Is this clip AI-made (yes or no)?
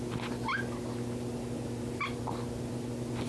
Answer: no